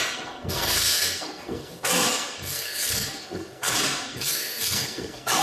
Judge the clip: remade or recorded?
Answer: remade